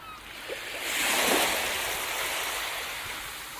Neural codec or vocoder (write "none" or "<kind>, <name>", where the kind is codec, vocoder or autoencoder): none